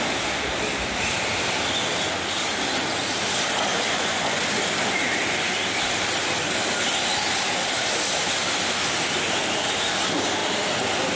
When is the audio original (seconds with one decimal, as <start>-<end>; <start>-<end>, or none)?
0.0-3.7; 4.4-11.2